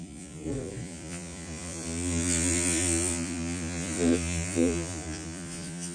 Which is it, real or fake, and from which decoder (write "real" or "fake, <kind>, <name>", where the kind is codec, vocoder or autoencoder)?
fake, vocoder, Vocos